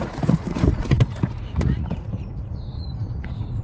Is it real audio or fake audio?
fake